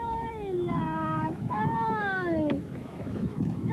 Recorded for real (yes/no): no